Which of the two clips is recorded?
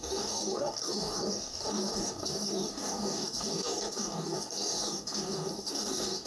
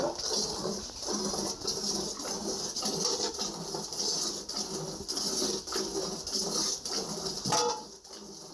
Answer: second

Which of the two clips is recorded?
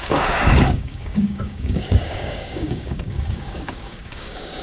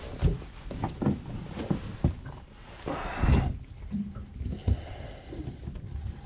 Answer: second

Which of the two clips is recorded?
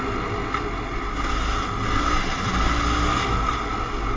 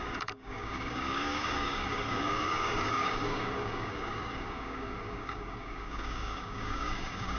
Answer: first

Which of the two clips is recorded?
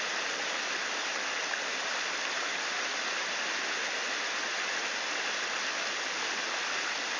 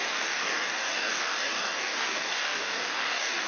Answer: first